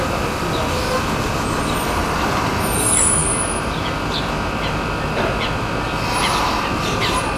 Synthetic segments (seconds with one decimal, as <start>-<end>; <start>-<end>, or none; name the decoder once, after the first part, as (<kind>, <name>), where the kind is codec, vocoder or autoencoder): none